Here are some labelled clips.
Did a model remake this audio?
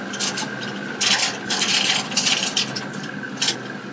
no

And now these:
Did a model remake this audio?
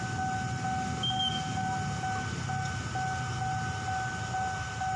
no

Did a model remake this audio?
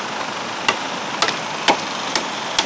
no